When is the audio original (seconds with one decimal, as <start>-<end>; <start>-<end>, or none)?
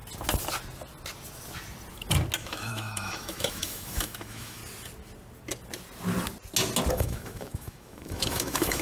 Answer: 0.0-2.4; 4.6-6.9